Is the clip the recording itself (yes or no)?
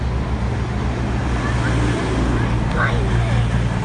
yes